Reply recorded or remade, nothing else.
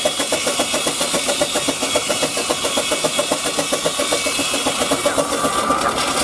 recorded